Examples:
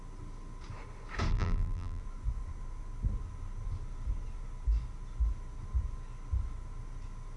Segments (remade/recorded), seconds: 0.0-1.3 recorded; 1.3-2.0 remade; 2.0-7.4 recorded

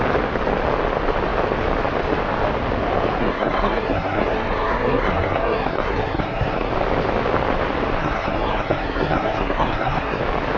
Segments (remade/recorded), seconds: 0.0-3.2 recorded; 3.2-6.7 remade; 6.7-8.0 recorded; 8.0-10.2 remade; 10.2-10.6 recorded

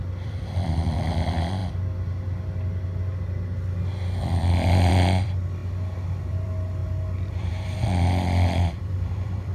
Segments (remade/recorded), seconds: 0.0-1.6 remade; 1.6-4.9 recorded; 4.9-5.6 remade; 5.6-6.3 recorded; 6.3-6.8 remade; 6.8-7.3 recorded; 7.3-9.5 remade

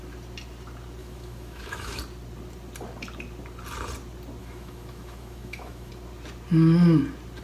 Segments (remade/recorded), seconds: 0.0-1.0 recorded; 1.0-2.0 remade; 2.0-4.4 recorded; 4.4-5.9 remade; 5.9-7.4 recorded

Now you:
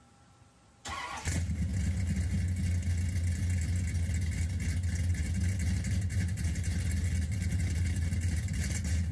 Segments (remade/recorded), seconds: 0.0-1.7 remade; 1.7-5.1 recorded; 5.1-9.1 remade

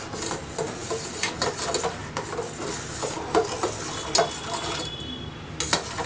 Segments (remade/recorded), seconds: 0.0-6.1 recorded

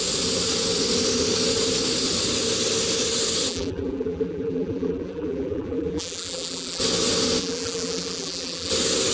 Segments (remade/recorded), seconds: 0.0-3.5 recorded; 3.5-6.8 remade; 6.8-7.4 recorded; 7.4-8.7 remade; 8.7-9.1 recorded

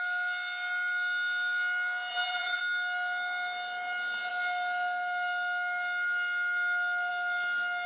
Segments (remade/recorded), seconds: 0.0-2.1 recorded; 2.1-2.6 remade; 2.6-7.9 recorded